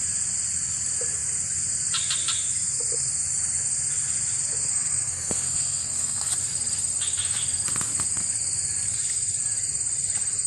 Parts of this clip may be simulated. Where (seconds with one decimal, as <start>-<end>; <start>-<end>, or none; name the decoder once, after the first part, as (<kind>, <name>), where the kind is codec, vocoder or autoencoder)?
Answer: 4.7-6.3 (codec, SNAC)